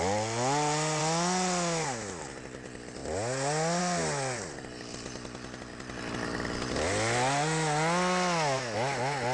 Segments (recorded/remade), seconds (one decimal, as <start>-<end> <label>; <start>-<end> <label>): 0.0-9.3 recorded